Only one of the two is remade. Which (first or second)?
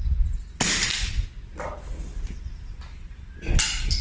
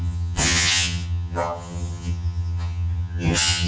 second